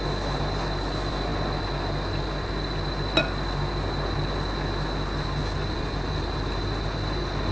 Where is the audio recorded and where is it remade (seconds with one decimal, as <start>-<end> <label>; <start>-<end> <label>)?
0.0-7.5 recorded